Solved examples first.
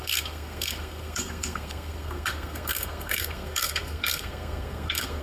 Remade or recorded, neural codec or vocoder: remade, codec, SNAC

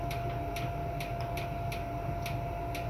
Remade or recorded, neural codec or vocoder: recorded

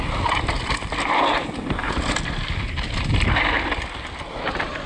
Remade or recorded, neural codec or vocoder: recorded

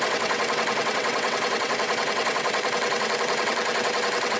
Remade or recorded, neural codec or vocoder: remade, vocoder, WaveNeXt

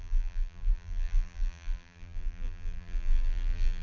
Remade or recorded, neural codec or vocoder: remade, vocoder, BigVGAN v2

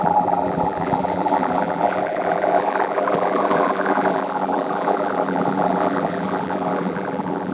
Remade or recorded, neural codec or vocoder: remade, vocoder, BigVGAN v2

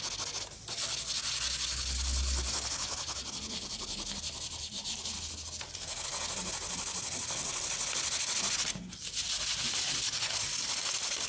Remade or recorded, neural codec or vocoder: recorded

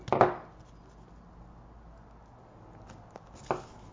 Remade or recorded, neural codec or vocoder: recorded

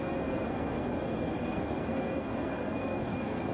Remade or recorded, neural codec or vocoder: remade, codec, SNAC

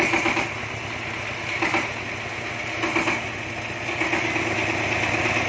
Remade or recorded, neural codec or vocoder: recorded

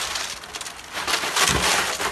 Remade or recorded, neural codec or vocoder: recorded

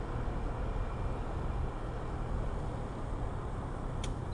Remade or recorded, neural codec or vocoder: recorded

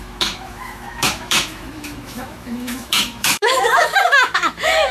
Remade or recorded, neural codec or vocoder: remade, autoencoder, DAC-VAE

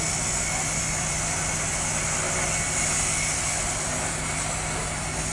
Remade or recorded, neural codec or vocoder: recorded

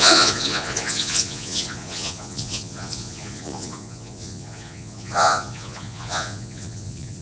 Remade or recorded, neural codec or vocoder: remade, vocoder, Vocos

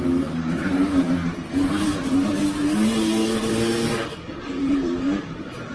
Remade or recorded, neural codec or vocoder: remade, vocoder, BigVGAN v2